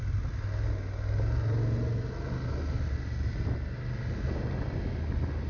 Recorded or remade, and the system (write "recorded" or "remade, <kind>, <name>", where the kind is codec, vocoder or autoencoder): recorded